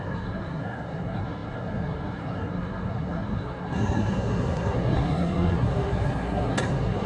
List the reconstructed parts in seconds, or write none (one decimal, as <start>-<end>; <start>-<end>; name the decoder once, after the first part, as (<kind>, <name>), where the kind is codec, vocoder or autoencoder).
0.0-7.1 (codec, SNAC)